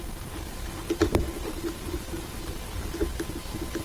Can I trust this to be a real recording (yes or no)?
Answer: yes